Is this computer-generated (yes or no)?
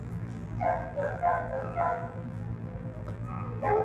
yes